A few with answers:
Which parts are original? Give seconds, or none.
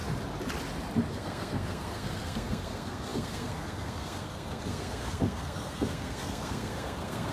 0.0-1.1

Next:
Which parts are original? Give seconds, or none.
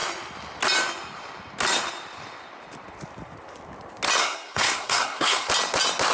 0.0-4.2; 5.5-6.1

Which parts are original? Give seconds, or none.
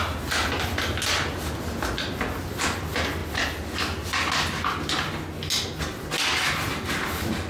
0.0-7.5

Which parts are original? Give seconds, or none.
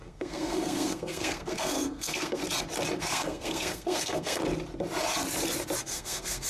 2.4-3.0; 4.4-5.8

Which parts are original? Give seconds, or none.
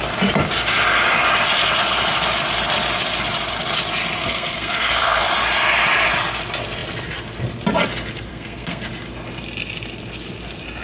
0.0-4.2; 5.2-8.3; 8.9-10.8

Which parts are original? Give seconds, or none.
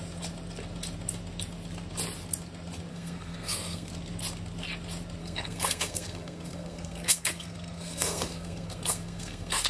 0.0-2.9; 3.9-5.2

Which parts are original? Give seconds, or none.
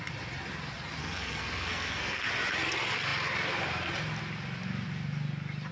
0.0-1.0; 2.3-5.7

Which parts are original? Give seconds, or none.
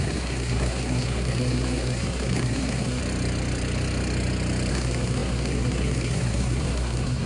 3.0-4.7